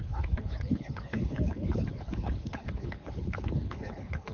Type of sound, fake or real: fake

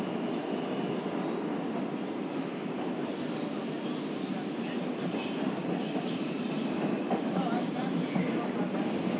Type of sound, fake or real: real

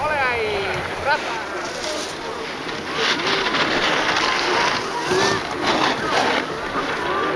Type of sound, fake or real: real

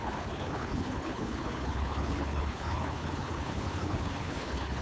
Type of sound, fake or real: fake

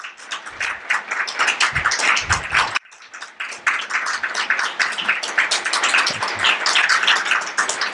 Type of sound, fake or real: real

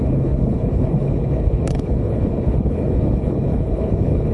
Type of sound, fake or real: fake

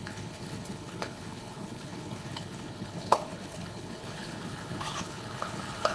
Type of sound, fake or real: fake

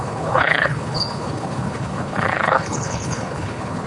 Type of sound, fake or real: fake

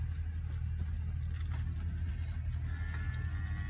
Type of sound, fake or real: real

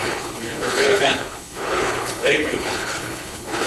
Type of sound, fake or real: fake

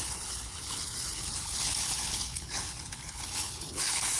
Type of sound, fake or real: fake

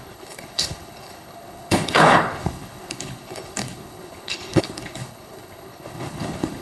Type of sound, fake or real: fake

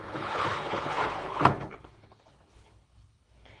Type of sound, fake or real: fake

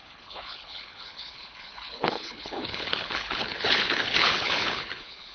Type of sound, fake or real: fake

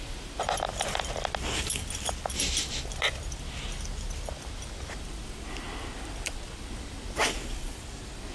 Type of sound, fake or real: real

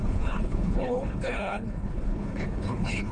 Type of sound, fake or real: fake